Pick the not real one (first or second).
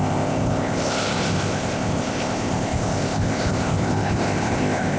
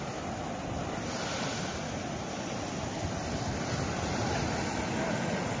first